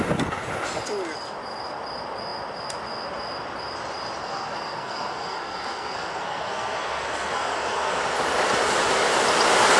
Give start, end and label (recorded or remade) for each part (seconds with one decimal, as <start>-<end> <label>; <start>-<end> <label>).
0.0-4.2 recorded; 4.2-8.0 remade; 8.0-9.8 recorded